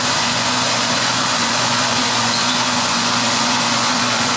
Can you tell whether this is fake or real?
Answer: fake